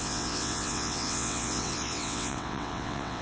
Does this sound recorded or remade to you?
remade